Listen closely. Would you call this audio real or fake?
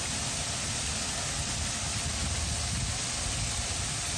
real